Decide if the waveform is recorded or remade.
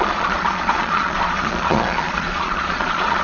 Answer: remade